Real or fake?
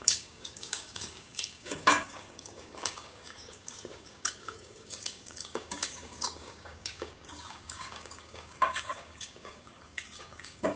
fake